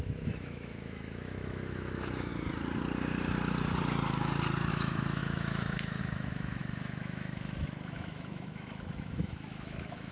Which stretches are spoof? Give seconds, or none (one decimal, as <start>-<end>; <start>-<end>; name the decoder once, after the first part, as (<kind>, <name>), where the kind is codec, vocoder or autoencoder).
0.0-2.3 (autoencoder, DAC-VAE); 4.7-10.1